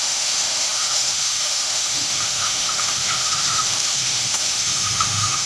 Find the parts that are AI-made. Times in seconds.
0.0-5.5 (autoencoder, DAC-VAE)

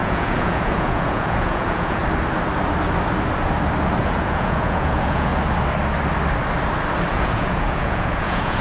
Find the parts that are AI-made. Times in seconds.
0.0-2.0 (vocoder, Vocos); 4.0-5.3; 7.1-8.6

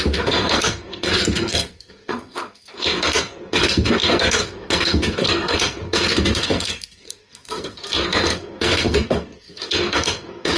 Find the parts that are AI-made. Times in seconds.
0.0-10.6 (codec, SNAC)